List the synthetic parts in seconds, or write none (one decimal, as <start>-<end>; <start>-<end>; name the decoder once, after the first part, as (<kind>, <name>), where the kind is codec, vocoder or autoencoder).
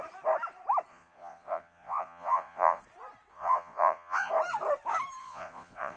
0.9-2.8 (vocoder, Vocos); 3.3-4.3; 5.2-6.0